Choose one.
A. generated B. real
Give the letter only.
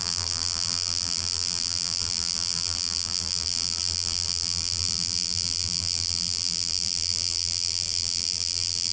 A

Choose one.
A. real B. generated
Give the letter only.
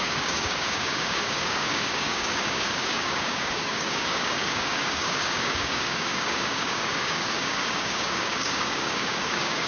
B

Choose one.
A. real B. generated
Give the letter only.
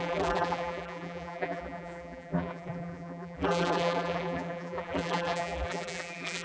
B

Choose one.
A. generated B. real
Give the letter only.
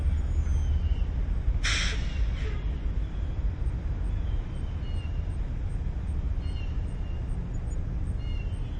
B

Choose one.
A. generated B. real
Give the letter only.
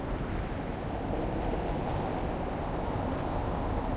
B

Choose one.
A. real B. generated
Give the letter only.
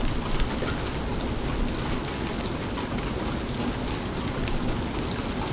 A